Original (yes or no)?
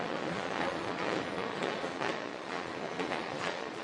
no